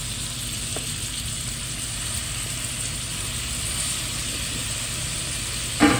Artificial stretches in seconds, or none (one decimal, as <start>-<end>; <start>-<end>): 0.7-3.0; 4.6-5.6